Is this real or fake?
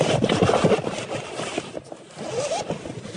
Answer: real